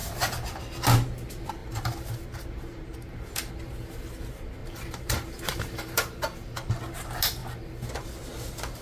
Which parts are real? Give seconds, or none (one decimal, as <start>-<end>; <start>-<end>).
0.6-1.6; 3.5-4.6; 6.8-7.4; 8.1-8.8